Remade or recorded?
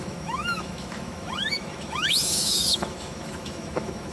remade